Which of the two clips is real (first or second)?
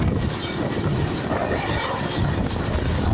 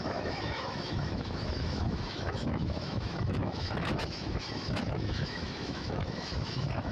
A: first